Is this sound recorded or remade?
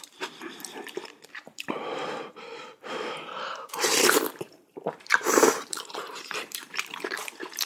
remade